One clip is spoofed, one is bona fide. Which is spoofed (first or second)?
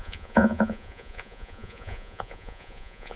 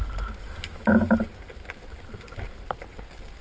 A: first